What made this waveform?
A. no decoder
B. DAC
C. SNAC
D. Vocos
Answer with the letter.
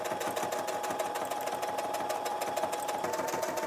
A